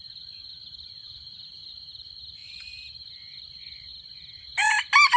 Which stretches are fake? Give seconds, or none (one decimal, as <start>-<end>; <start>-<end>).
1.0-1.7